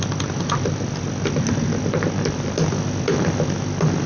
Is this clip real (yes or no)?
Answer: yes